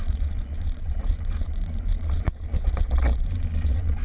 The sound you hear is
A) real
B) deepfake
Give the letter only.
B